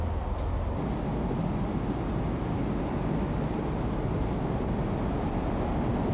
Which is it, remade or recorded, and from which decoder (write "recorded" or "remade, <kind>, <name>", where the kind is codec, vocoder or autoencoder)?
recorded